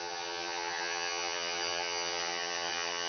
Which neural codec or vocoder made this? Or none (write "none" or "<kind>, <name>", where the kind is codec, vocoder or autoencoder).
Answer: vocoder, HiFi-GAN